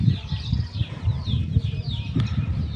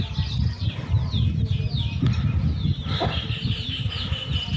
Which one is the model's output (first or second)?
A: first